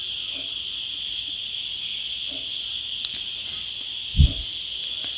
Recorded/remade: recorded